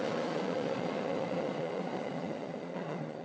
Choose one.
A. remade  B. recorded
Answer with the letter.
A